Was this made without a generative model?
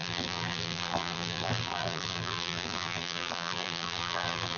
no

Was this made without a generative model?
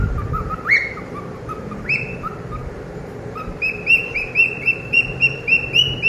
no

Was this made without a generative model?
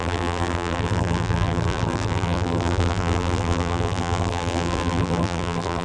no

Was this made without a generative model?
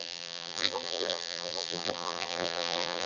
no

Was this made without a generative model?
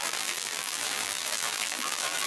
no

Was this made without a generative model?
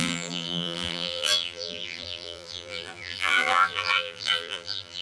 no